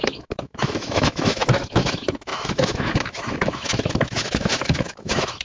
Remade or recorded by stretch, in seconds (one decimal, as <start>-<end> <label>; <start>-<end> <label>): 0.0-5.4 remade